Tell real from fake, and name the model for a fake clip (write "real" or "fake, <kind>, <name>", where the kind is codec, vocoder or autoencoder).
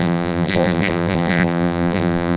fake, vocoder, BigVGAN v2